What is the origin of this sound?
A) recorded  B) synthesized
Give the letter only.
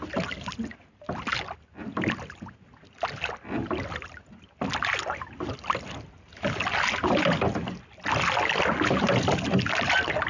A